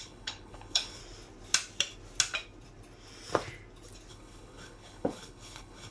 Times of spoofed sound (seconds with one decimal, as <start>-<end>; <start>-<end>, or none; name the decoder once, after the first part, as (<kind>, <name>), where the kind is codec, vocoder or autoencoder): 0.0-1.0 (codec, HILCodec); 4.1-5.9